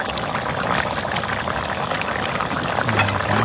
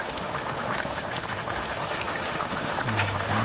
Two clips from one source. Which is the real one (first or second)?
first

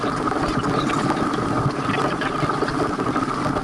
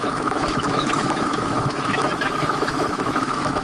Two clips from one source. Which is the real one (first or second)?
first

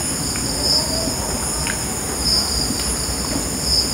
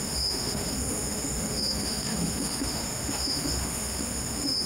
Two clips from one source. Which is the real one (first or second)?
first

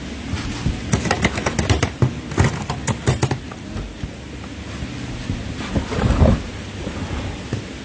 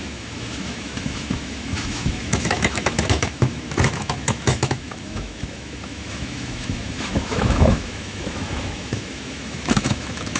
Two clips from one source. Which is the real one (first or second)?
first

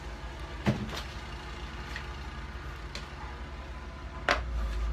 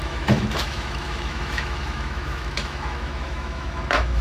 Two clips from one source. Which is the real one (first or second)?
first